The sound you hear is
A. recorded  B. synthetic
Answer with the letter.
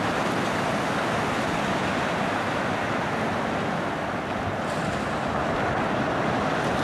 A